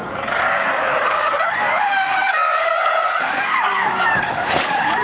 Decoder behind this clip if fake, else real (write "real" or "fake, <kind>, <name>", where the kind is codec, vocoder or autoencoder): fake, codec, DAC